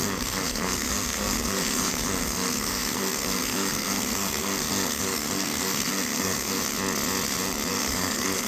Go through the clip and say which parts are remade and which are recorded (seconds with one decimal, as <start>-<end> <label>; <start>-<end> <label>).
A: 0.0-6.6 remade; 6.6-7.7 recorded; 7.7-8.5 remade